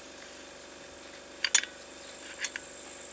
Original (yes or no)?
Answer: yes